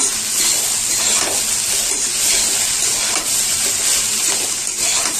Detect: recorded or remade recorded